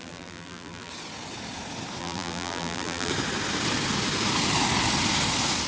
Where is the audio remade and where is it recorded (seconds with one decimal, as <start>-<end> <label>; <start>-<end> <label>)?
0.0-0.9 remade; 0.9-2.0 recorded; 2.0-3.1 remade; 3.1-5.7 recorded